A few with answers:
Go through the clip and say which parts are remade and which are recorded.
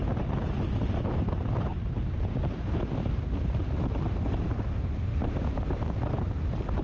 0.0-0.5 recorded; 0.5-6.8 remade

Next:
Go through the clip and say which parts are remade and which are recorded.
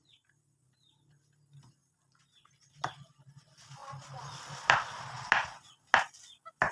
0.0-1.8 recorded; 1.8-3.2 remade; 3.2-6.7 recorded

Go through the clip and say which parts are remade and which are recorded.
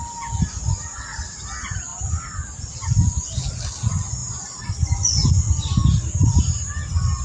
0.0-7.2 recorded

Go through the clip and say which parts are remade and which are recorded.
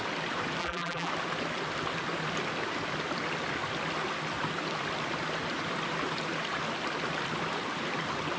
0.0-0.6 recorded; 0.6-1.1 remade; 1.1-8.4 recorded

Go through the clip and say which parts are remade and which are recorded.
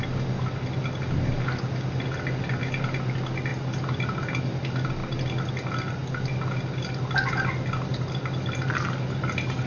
0.0-9.7 recorded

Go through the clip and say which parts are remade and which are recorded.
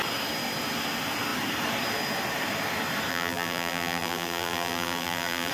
0.0-3.1 recorded; 3.1-5.5 remade